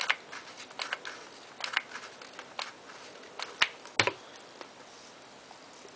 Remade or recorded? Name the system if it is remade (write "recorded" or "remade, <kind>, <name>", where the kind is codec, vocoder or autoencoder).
recorded